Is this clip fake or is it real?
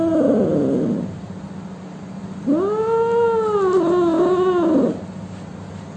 real